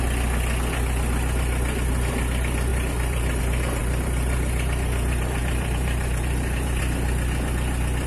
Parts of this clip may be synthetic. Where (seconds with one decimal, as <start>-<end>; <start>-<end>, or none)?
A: 2.7-3.4; 3.8-6.8